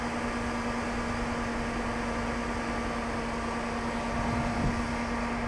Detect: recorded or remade recorded